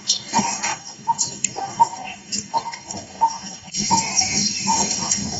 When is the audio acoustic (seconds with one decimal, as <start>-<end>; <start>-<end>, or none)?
none